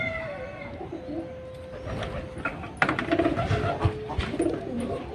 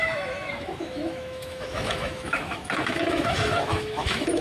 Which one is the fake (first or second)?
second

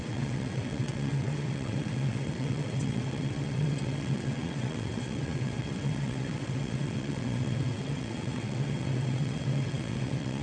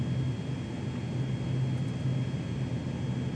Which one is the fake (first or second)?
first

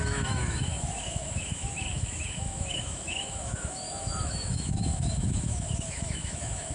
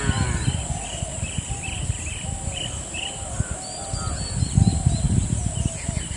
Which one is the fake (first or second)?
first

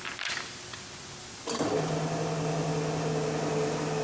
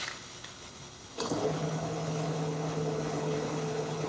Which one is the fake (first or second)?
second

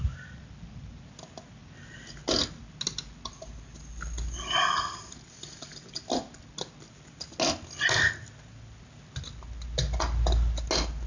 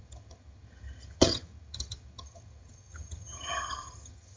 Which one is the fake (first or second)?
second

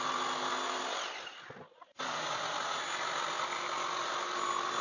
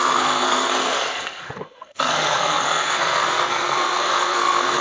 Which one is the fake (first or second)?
second